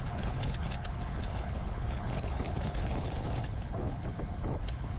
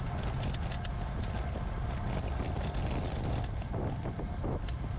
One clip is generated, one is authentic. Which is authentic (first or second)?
second